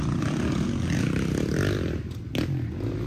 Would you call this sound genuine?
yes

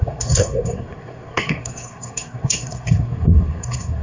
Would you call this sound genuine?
no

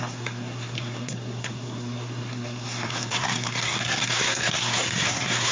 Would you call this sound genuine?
no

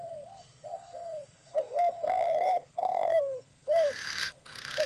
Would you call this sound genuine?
no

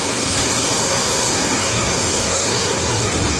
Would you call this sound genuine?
no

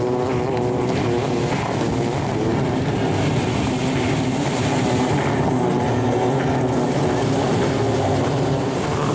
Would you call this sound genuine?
yes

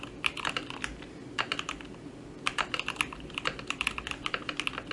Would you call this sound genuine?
yes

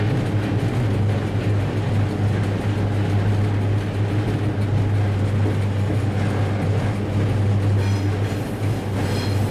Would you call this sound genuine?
yes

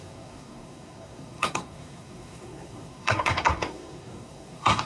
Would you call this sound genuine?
no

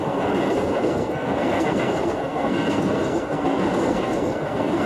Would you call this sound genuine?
no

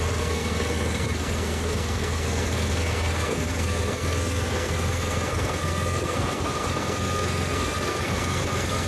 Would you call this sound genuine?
no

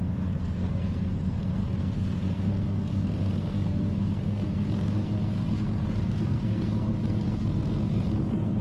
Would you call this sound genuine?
no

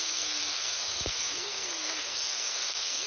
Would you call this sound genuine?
no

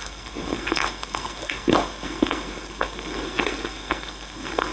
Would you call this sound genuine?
no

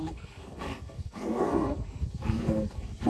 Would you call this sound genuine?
no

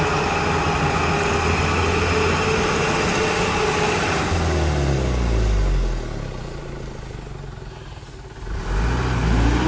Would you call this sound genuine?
yes